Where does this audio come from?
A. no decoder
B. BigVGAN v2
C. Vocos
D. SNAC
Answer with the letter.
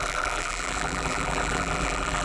B